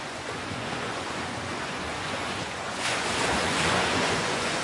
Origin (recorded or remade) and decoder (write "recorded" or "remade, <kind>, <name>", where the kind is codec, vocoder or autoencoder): remade, vocoder, Vocos